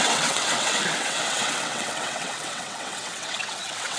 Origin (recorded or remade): remade